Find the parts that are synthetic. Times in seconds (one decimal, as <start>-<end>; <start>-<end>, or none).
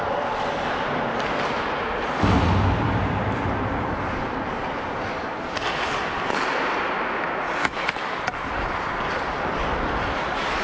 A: 7.6-8.2